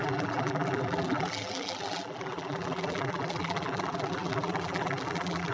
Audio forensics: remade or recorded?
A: remade